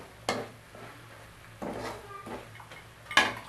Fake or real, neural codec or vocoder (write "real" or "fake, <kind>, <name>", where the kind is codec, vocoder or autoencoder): real